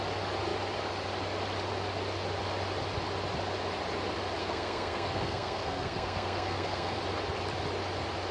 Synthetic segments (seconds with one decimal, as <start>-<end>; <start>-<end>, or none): 4.4-7.0